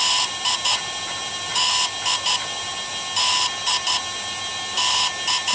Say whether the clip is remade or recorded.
recorded